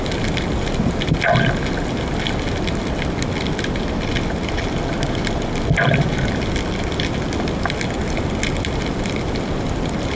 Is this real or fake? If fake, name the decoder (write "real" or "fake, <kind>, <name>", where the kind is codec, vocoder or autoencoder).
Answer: real